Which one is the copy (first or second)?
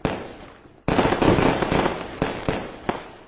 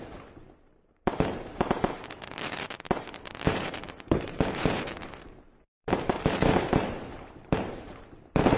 second